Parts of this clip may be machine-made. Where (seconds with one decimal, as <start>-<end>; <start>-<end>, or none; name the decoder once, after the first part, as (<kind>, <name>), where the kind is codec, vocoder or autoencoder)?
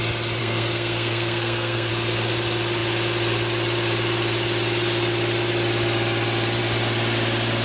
0.4-1.9 (codec, SNAC)